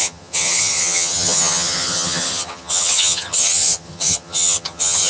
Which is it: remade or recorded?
remade